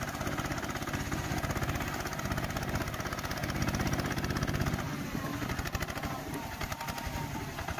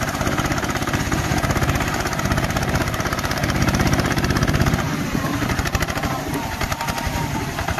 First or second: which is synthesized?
second